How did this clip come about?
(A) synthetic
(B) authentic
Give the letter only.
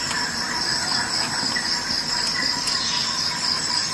B